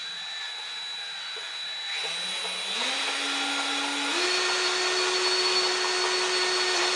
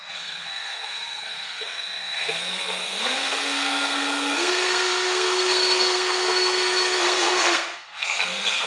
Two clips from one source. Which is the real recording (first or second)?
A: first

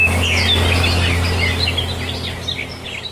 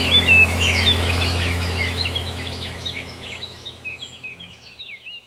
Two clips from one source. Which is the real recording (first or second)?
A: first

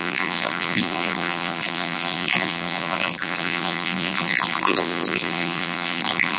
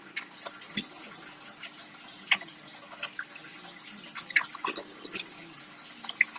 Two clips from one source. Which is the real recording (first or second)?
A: second